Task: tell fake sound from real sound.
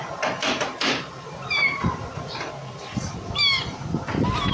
real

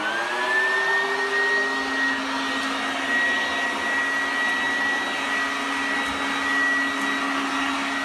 real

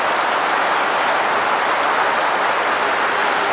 real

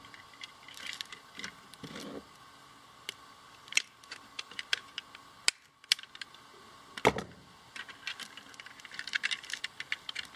real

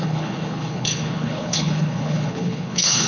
fake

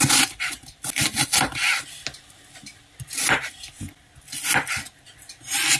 real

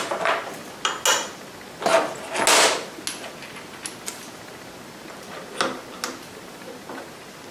real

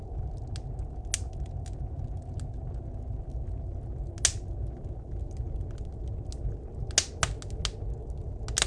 real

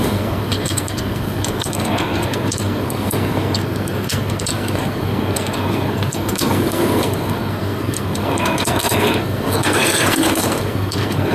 fake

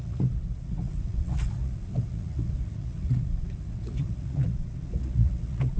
fake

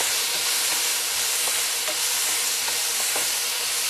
real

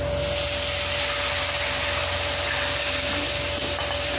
real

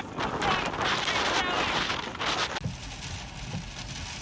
real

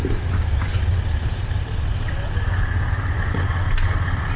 real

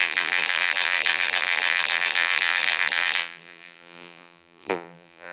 fake